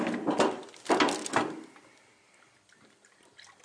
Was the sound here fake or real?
real